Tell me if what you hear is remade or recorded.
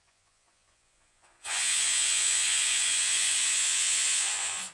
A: remade